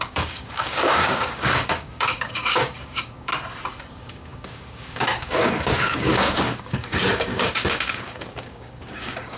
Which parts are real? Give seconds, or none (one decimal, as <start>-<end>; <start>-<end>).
3.3-3.9